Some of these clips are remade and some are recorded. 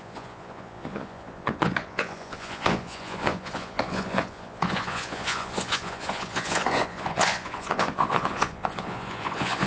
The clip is remade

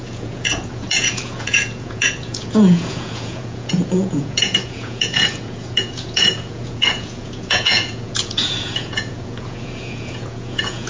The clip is remade